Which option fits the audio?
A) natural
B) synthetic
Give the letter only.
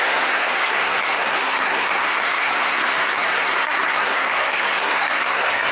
B